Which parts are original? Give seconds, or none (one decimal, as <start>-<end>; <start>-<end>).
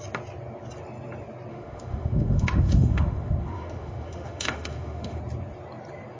0.0-1.5; 5.2-6.2